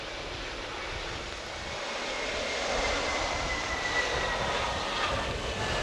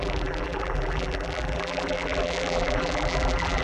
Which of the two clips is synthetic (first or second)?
second